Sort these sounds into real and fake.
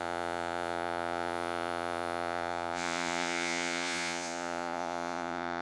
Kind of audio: fake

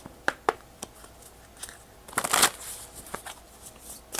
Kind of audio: real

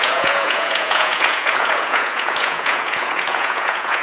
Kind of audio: fake